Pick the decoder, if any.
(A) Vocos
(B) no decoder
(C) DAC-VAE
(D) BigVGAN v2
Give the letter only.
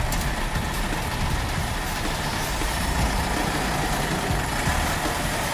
B